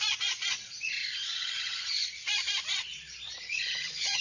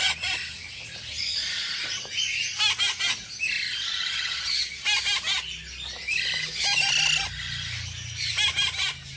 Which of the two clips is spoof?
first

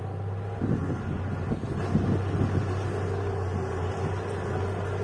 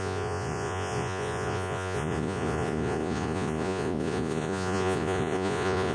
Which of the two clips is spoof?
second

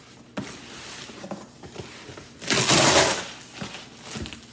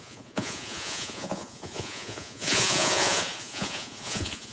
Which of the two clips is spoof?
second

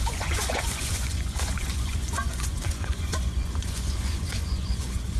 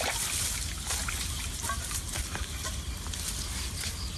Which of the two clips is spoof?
first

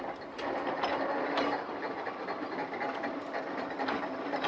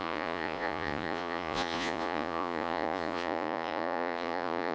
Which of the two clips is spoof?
second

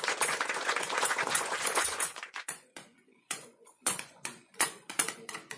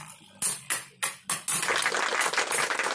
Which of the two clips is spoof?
first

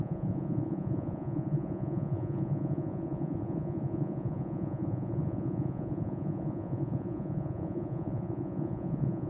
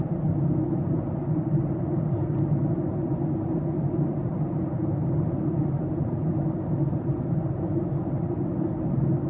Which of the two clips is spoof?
first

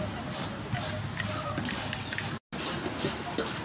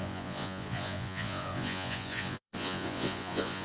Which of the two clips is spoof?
second